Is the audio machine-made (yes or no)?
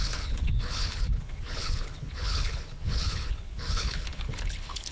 yes